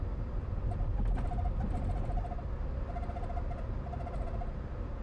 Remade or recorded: recorded